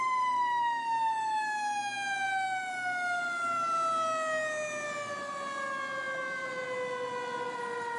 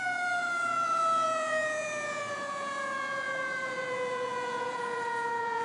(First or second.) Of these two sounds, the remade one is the second